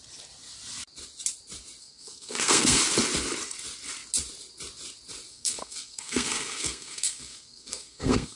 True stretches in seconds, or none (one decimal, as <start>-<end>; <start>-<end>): 0.0-1.8; 2.8-5.3